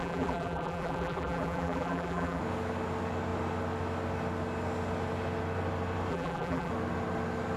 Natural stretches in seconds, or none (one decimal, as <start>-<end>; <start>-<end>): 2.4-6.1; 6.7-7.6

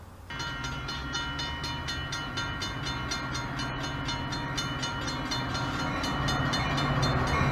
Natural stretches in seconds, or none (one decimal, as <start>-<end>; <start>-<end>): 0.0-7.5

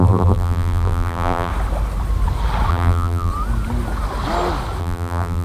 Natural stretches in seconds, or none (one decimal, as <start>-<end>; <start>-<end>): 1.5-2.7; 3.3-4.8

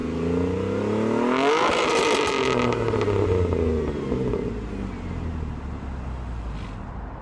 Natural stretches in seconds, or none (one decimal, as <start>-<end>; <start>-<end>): 0.0-7.2